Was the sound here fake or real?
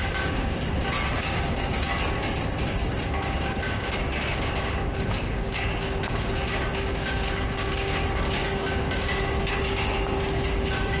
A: fake